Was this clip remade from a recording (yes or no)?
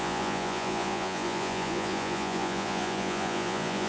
yes